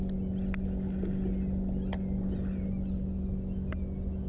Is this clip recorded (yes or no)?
yes